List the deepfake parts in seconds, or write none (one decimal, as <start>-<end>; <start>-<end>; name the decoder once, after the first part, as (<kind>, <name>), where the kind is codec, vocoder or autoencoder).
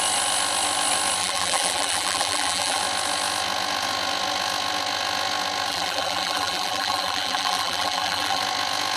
1.2-2.8 (vocoder, BigVGAN v2); 5.7-8.4